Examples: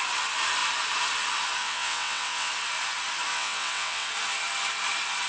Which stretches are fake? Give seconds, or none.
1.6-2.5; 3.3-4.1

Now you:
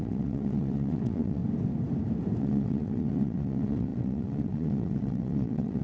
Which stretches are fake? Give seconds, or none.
0.0-1.4; 2.4-5.8

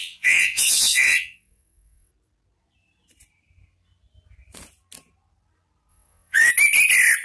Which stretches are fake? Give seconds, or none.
0.0-2.1; 5.9-6.5

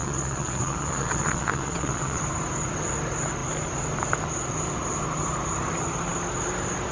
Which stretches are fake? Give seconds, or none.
0.0-2.2

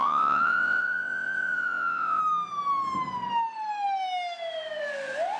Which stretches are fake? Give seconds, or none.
0.0-2.2

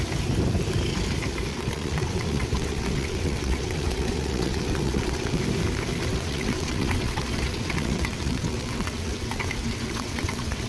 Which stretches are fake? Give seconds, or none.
1.5-5.4; 6.1-10.7

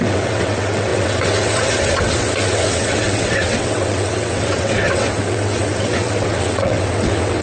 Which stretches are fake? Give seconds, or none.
0.0-7.4